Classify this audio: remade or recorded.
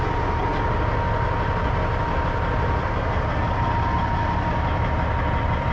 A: recorded